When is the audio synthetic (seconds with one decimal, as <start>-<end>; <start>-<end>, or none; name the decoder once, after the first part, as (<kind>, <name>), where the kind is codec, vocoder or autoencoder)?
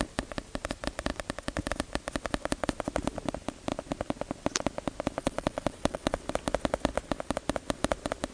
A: 5.2-6.2 (vocoder, WaveNeXt)